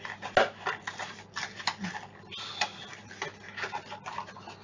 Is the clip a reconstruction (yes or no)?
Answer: no